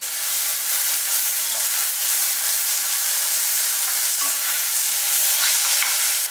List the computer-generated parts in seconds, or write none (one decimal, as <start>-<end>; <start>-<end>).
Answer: 1.3-5.1